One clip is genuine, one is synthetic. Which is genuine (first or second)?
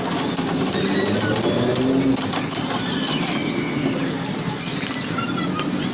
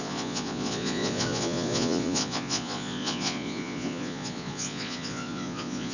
first